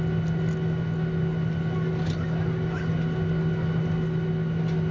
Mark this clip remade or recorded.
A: recorded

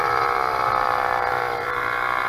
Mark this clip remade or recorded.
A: remade